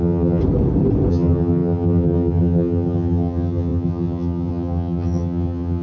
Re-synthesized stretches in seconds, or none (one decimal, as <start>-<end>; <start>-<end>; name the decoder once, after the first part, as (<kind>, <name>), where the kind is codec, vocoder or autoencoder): 0.0-0.4 (vocoder, HiFi-GAN); 1.1-5.8